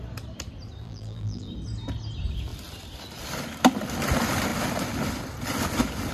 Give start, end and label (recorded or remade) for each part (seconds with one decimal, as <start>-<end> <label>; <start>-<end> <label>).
0.0-0.8 recorded; 0.8-1.5 remade; 1.5-6.1 recorded